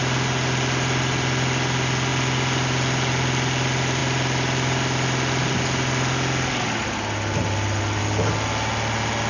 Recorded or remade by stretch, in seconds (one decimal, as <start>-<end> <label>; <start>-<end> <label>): 0.0-9.3 recorded